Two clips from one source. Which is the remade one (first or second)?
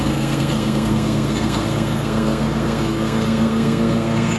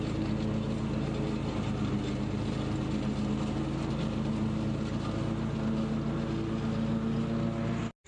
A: first